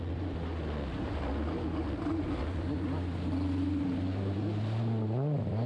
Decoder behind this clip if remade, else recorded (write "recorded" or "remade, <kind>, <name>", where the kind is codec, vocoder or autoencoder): recorded